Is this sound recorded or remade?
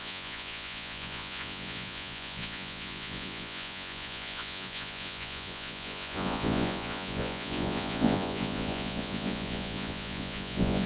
remade